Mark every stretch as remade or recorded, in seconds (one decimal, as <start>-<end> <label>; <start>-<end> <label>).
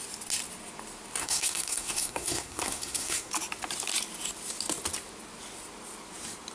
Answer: 0.0-1.2 recorded; 1.2-3.3 remade; 3.3-6.5 recorded